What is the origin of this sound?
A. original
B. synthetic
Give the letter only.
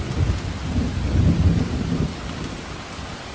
A